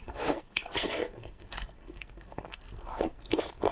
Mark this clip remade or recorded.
remade